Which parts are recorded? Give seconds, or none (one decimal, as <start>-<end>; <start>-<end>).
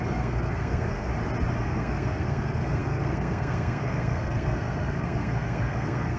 1.1-1.6